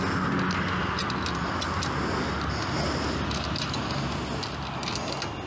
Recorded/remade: recorded